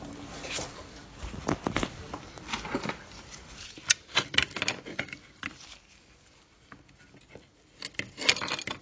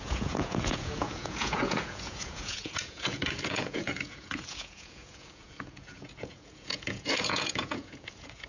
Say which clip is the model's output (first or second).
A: second